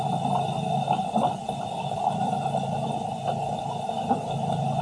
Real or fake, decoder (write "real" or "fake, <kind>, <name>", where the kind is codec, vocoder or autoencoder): real